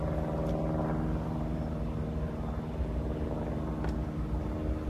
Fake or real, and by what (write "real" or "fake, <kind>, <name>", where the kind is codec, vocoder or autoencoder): real